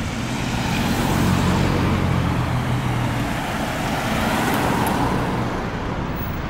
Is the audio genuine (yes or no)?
yes